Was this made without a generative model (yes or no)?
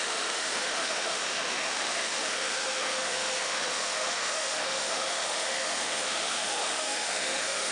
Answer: no